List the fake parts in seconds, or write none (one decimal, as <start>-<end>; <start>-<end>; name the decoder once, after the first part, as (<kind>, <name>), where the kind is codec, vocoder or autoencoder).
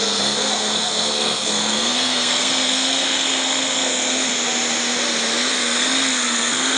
0.0-4.3 (codec, SNAC); 5.5-6.8